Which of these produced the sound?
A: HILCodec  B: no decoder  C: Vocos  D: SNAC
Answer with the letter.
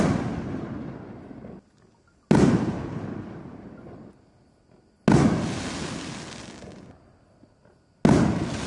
B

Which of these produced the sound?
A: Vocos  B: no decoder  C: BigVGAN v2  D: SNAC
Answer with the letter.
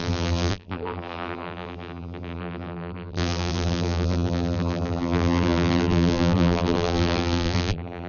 C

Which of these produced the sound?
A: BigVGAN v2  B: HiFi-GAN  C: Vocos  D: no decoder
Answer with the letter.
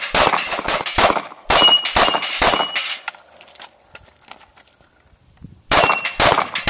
D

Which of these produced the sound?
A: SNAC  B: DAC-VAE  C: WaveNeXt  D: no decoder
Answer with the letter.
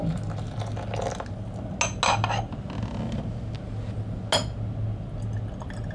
D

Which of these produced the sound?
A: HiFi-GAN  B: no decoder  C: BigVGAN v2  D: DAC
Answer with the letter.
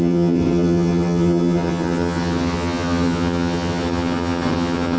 A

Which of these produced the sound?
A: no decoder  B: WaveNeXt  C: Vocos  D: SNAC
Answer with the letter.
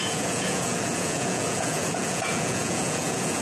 C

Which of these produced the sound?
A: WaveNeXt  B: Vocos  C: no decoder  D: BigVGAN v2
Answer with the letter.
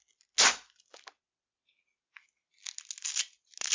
C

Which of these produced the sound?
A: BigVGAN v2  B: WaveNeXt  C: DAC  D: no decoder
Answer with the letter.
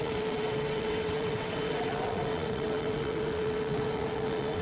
B